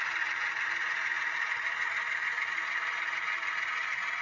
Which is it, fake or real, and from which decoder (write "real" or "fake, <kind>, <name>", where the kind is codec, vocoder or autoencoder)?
real